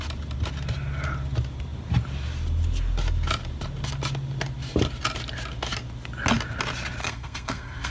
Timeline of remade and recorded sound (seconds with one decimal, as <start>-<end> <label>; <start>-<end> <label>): 0.0-7.0 recorded; 7.0-7.9 remade